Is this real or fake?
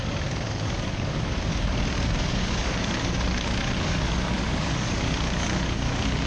fake